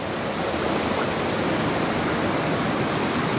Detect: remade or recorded recorded